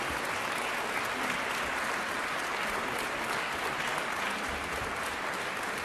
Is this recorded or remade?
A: recorded